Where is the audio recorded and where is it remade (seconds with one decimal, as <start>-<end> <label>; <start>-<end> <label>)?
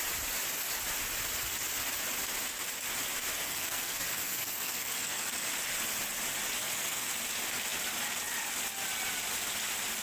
0.0-3.2 recorded; 3.2-5.5 remade; 5.5-6.6 recorded; 6.6-7.1 remade; 7.1-10.0 recorded